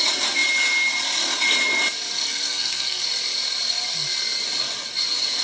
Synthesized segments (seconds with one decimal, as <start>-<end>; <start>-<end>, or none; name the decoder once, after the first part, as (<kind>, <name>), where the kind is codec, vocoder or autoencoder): 2.2-3.0 (codec, SNAC)